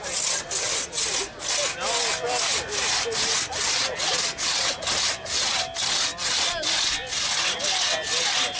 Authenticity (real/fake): real